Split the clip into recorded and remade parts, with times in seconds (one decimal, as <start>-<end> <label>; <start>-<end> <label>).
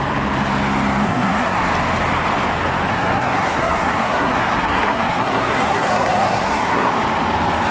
0.0-1.0 recorded; 1.0-1.7 remade; 1.7-2.9 recorded; 2.9-6.9 remade; 6.9-7.7 recorded